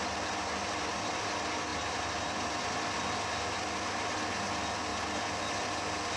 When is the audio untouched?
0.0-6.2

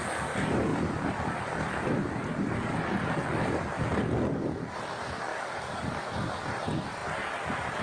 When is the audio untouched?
0.0-5.3; 6.0-7.8